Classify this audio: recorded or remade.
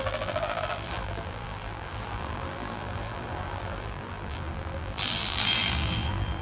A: remade